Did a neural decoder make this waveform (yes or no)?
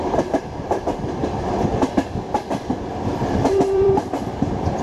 yes